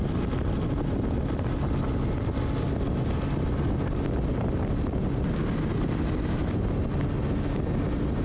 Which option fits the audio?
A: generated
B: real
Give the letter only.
B